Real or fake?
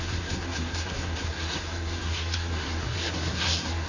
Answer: fake